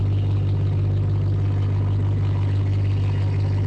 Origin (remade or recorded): recorded